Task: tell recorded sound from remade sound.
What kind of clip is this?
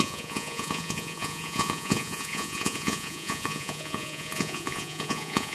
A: remade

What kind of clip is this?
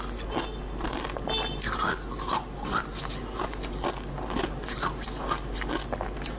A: recorded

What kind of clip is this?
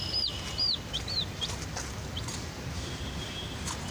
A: recorded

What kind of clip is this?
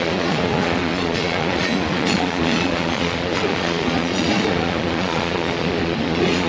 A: remade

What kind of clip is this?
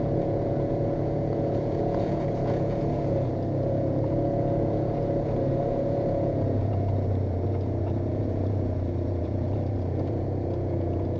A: remade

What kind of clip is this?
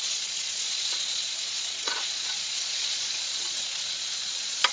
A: remade